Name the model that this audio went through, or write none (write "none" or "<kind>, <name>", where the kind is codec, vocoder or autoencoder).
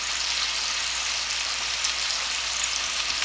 none